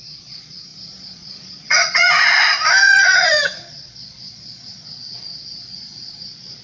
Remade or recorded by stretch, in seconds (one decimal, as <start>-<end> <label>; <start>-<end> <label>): 0.0-6.6 remade